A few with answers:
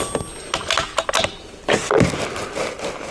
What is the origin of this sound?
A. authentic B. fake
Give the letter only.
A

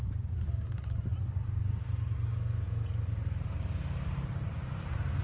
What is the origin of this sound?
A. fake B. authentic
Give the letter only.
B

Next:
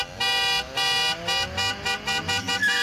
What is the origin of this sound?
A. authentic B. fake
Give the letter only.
A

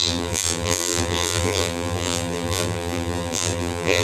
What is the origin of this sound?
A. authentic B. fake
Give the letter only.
B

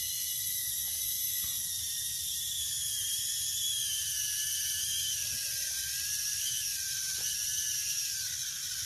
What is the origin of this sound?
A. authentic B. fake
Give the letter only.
B